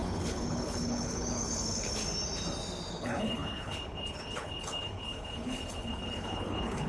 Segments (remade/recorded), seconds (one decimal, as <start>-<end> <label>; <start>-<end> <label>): 0.0-2.0 remade; 2.0-2.9 recorded; 2.9-6.9 remade

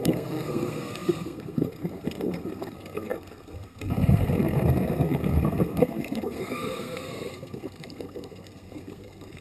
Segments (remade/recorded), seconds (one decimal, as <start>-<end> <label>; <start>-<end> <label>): 0.0-9.4 remade